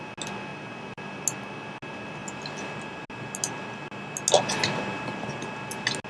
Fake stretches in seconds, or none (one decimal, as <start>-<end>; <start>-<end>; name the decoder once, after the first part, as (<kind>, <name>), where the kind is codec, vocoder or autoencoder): none